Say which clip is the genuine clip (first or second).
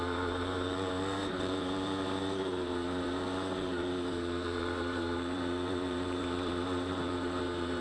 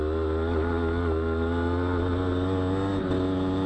second